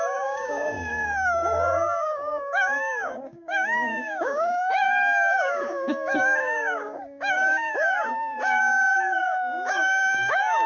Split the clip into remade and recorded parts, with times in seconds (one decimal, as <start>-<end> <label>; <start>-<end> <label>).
0.0-10.7 remade